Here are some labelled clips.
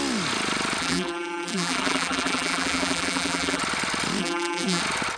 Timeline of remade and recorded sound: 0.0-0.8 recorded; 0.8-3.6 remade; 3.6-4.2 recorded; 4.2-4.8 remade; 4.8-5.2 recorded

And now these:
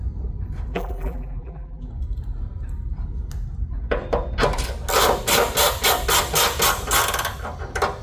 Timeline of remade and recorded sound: 0.0-0.7 recorded; 0.7-1.9 remade; 1.9-8.0 recorded

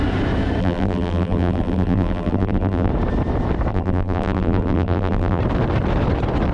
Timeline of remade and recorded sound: 0.0-0.6 recorded; 0.6-2.9 remade; 2.9-3.7 recorded; 3.7-5.4 remade; 5.4-6.5 recorded

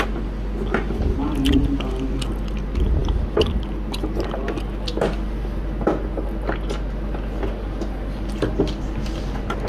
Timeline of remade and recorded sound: 0.0-9.7 recorded

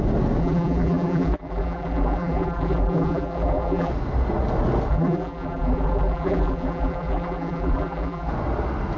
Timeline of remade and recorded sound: 0.0-0.4 recorded; 0.4-3.9 remade; 3.9-4.9 recorded; 4.9-8.3 remade; 8.3-9.0 recorded

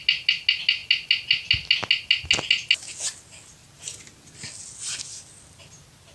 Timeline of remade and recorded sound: 0.0-6.1 recorded

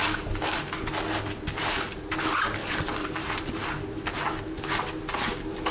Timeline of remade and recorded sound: 0.0-0.6 remade; 0.6-2.6 recorded; 2.6-3.7 remade; 3.7-5.7 recorded

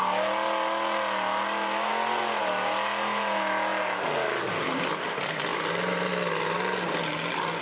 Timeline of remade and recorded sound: 0.0-5.5 recorded; 5.5-6.1 remade; 6.1-7.6 recorded